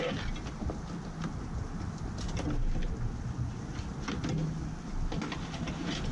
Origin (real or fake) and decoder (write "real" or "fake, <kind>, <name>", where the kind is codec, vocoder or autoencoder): real